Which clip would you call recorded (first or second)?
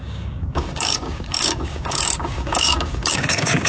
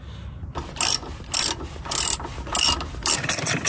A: second